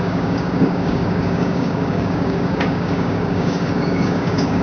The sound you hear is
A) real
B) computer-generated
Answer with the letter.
B